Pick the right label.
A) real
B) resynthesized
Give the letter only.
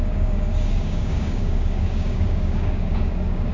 B